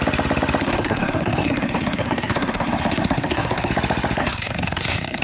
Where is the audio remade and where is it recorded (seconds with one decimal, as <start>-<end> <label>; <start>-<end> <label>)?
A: 0.0-0.6 recorded; 0.6-3.7 remade; 3.7-4.2 recorded; 4.2-5.2 remade